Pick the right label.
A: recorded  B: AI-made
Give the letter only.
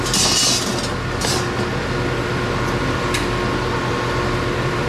A